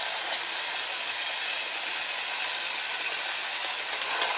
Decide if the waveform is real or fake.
real